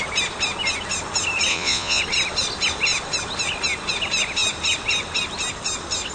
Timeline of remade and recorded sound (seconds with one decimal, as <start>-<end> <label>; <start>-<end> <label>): 0.0-1.5 recorded; 1.5-2.0 remade; 2.0-6.1 recorded

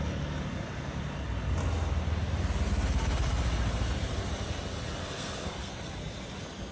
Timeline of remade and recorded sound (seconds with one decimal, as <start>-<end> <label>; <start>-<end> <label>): 0.0-5.0 recorded; 5.0-5.9 remade; 5.9-6.7 recorded

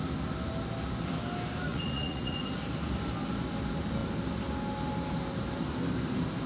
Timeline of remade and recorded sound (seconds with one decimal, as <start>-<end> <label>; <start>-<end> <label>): 0.0-1.7 recorded; 1.7-2.4 remade; 2.4-6.5 recorded

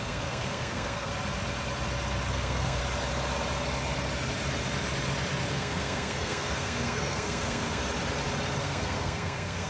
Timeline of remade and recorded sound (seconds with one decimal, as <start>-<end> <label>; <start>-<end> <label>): 0.0-1.1 remade; 1.1-2.3 recorded; 2.3-2.8 remade; 2.8-5.5 recorded; 5.5-7.8 remade; 7.8-8.6 recorded; 8.6-9.7 remade

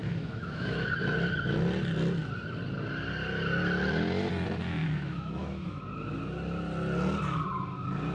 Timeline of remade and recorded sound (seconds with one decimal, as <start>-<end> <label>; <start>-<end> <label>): 0.0-0.9 remade; 0.9-4.8 recorded; 4.8-5.8 remade; 5.8-8.1 recorded

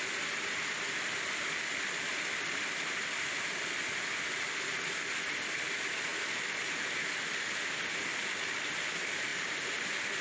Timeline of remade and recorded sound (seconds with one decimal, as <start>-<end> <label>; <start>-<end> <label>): 0.0-10.2 recorded

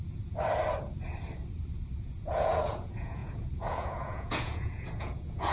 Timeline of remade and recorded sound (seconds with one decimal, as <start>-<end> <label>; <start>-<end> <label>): 0.0-2.0 recorded; 2.0-5.5 remade